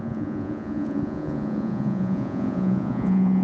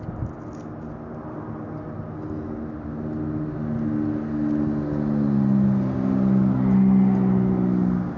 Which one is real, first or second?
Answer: second